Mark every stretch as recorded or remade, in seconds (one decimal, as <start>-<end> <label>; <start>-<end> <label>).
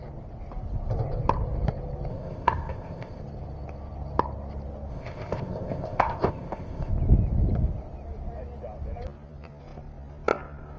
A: 0.0-2.1 recorded; 2.1-3.2 remade; 3.2-4.9 recorded; 4.9-6.9 remade; 6.9-10.8 recorded